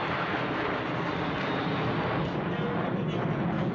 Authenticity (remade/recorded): recorded